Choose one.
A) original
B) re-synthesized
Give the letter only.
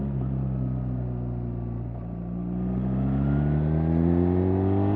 A